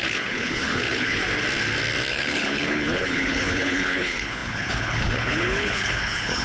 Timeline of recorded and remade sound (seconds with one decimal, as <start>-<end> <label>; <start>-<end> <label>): 0.0-1.2 remade; 1.2-2.1 recorded; 2.1-6.4 remade